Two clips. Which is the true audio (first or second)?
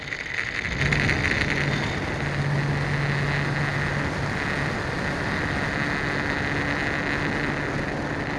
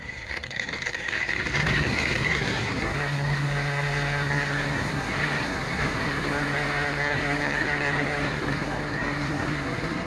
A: first